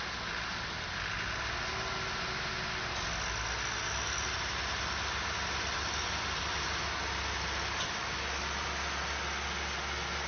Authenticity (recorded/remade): recorded